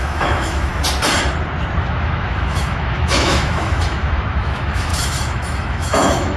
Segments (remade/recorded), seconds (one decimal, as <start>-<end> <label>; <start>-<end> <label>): 0.0-0.7 remade; 0.7-1.8 recorded; 1.8-6.4 remade